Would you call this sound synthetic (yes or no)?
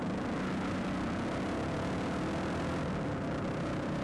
yes